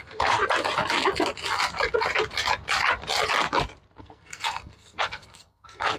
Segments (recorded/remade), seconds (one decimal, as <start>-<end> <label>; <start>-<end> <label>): 0.0-0.4 remade; 0.4-4.0 recorded; 4.0-6.0 remade